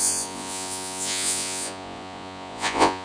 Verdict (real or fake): fake